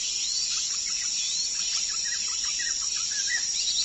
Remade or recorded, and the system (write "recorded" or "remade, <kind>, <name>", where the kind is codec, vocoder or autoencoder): recorded